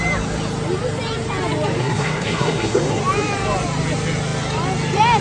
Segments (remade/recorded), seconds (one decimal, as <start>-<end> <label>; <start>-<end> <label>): 0.0-1.8 recorded; 1.8-3.0 remade; 3.0-5.2 recorded